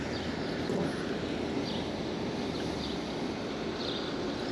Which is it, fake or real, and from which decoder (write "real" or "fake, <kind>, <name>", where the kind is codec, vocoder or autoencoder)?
real